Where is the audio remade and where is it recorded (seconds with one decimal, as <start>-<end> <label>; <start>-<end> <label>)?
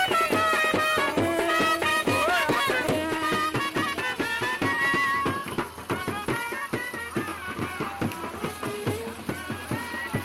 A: 0.0-1.9 recorded; 1.9-2.6 remade; 2.6-10.2 recorded